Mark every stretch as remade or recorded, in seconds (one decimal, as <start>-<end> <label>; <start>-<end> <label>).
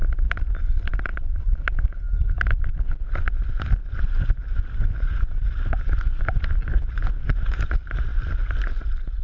0.0-9.2 recorded